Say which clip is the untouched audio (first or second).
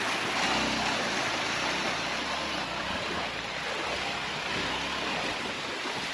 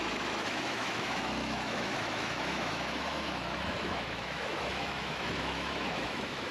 first